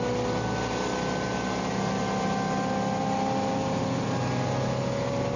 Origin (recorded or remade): recorded